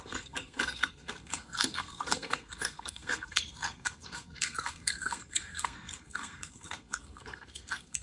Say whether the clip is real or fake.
fake